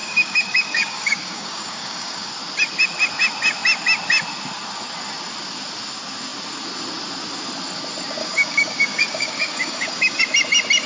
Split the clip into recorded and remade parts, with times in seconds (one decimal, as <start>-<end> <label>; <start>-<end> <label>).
0.0-2.3 remade; 2.3-8.2 recorded; 8.2-10.2 remade; 10.2-10.9 recorded

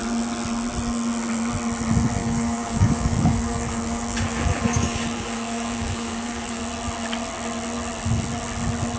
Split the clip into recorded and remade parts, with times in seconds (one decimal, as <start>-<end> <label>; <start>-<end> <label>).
0.0-2.2 recorded; 2.2-6.6 remade; 6.6-9.0 recorded

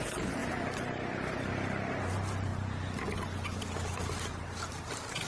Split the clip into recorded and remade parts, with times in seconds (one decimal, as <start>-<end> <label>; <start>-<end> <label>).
0.0-5.3 recorded